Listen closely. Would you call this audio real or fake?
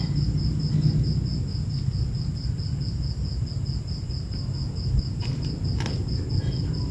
real